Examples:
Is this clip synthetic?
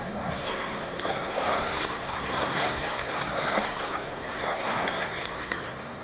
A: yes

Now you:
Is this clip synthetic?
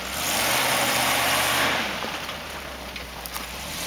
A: no